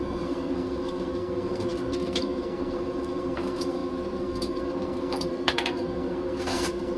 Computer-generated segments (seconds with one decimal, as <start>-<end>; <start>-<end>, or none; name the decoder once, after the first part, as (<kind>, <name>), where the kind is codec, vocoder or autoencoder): 0.0-7.0 (codec, SNAC)